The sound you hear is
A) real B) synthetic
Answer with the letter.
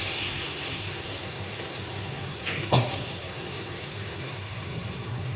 B